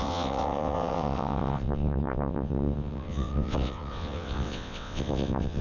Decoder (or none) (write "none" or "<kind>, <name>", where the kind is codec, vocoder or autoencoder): vocoder, WaveNeXt